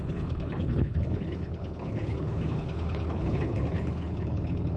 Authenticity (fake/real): fake